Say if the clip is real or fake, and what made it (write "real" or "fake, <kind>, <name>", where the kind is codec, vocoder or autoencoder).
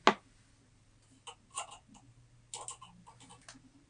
real